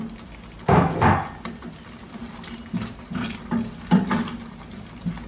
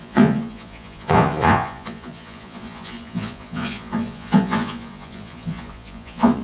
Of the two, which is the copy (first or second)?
second